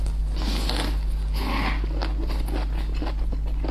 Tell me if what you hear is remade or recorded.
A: recorded